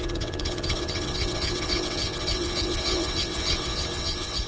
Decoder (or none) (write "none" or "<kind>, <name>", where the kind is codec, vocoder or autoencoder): vocoder, WaveNeXt